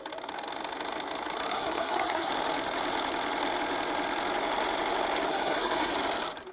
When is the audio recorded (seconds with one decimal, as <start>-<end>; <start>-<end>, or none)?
0.0-1.5; 2.3-5.3; 5.9-6.5